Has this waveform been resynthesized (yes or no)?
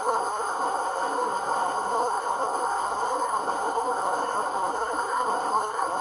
yes